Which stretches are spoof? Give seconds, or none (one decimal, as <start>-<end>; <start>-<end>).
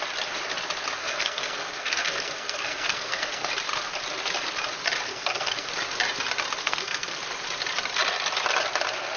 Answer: 1.0-3.5; 5.1-5.7; 6.6-7.2